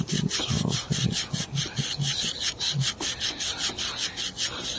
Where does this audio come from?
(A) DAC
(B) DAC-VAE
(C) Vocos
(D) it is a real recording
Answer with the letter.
D